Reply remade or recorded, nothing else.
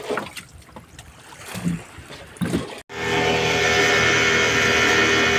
recorded